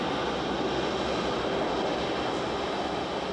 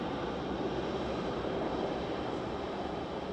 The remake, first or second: second